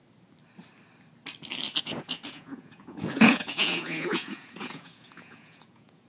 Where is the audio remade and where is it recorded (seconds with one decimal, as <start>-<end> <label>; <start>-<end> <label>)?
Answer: 0.0-1.8 recorded; 1.8-6.1 remade